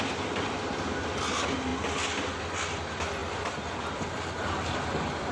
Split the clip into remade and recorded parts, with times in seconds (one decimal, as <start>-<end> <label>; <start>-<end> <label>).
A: 0.0-5.3 recorded